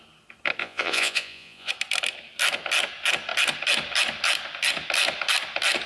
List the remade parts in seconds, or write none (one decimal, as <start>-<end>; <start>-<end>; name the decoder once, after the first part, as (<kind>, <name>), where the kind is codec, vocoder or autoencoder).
0.6-1.7 (vocoder, Vocos)